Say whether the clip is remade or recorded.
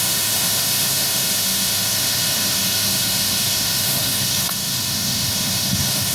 remade